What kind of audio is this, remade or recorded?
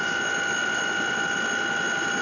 recorded